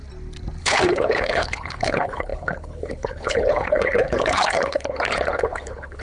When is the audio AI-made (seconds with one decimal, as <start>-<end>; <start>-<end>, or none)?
0.6-6.0